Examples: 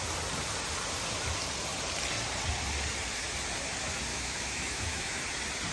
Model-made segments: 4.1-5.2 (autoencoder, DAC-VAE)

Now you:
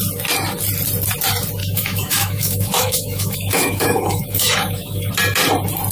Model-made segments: 1.6-5.1 (autoencoder, DAC-VAE)

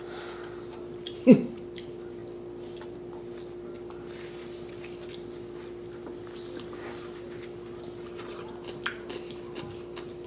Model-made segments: none

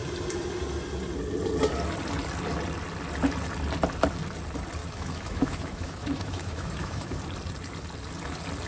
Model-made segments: 4.8-7.2 (autoencoder, DAC-VAE)